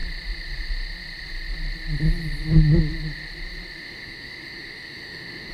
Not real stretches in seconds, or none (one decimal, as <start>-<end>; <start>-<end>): 3.8-5.5